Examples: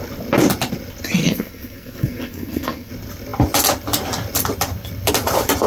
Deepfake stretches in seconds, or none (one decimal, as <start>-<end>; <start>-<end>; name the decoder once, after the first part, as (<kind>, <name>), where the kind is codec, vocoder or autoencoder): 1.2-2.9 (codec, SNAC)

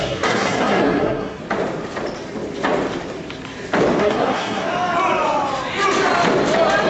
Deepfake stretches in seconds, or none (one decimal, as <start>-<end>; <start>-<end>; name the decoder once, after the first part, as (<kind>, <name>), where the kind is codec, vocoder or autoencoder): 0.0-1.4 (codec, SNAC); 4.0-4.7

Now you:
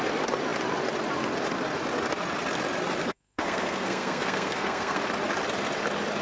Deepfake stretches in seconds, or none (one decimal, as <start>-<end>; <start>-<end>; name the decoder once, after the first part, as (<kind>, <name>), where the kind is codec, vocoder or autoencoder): 3.0-5.0 (codec, SNAC)

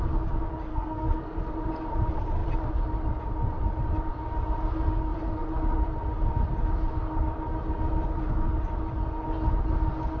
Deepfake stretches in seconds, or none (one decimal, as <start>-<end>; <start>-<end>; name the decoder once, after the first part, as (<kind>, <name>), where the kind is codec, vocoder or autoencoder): 0.7-1.5 (codec, SNAC)

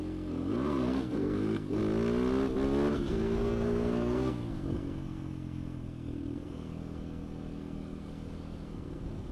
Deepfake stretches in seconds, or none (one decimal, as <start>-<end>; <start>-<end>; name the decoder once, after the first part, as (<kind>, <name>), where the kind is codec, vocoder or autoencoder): 0.0-1.8 (codec, SNAC); 2.9-9.3

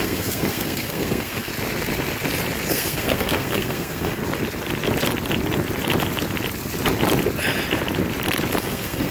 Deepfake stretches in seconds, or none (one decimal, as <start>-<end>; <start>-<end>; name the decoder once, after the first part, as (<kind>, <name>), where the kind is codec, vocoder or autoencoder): 0.0-1.5 (codec, SNAC); 2.7-4.2; 8.6-9.1

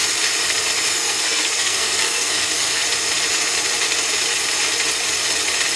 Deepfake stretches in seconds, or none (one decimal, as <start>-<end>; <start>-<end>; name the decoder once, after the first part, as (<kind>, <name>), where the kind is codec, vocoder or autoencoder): 0.9-2.8 (codec, SNAC)

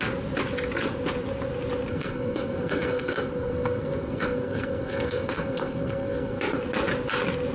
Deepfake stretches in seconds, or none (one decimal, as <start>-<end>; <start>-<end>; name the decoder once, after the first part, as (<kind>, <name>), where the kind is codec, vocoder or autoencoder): 1.9-6.4 (codec, SNAC)